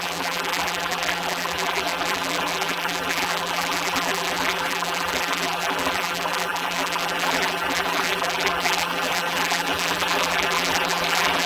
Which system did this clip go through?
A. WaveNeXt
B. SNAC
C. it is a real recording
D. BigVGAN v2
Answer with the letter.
D